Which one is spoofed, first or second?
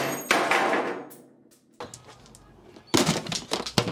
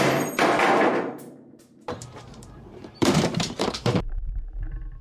second